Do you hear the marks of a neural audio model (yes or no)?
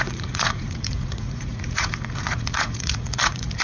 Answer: yes